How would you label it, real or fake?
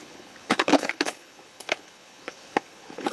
fake